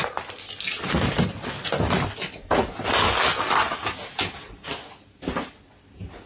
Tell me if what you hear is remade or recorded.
recorded